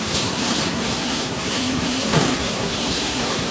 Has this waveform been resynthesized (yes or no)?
yes